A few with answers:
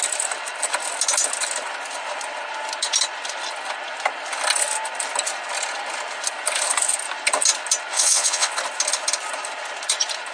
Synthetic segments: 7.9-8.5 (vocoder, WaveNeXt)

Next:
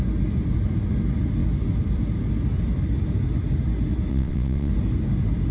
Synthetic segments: 4.1-4.7 (vocoder, WaveNeXt)

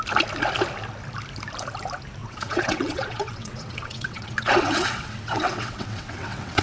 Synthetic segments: 2.2-6.6 (vocoder, WaveNeXt)

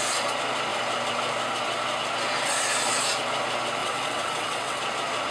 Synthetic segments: 3.8-4.8 (vocoder, WaveNeXt)

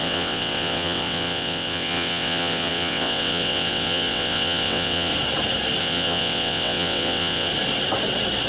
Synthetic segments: 0.0-5.1 (vocoder, WaveNeXt); 5.8-7.5

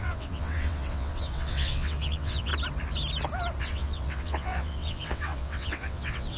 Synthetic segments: 0.0-2.5 (vocoder, WaveNeXt); 3.6-6.4